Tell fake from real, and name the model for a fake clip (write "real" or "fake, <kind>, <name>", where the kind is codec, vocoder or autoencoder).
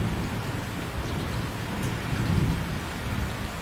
real